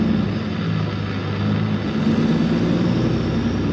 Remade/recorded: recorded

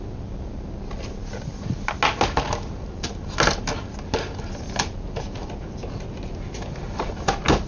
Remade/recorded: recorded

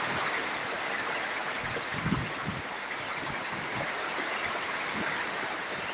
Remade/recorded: recorded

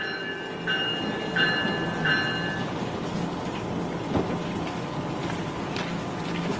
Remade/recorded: recorded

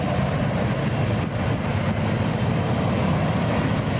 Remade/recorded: recorded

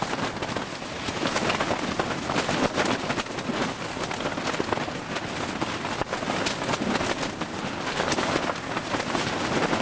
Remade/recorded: recorded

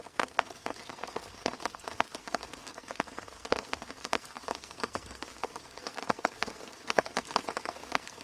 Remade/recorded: remade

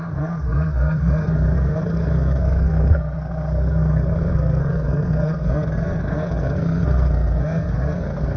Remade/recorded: remade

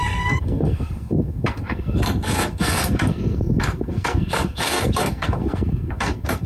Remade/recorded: remade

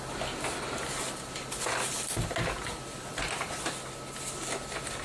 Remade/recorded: recorded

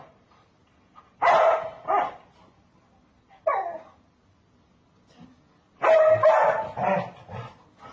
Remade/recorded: recorded